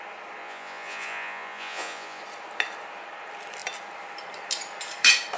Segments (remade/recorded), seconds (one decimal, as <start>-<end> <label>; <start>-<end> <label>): 0.0-0.4 recorded; 0.4-2.2 remade; 2.2-5.4 recorded